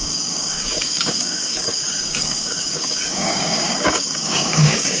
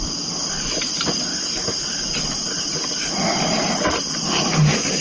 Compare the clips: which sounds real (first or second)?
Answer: second